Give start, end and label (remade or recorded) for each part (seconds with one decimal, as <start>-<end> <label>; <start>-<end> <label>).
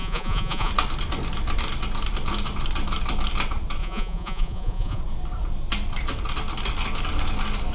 0.0-0.7 remade; 0.7-3.8 recorded; 3.8-5.0 remade; 5.0-7.7 recorded